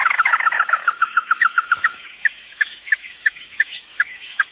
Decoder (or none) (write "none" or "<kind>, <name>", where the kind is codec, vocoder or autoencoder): autoencoder, DAC-VAE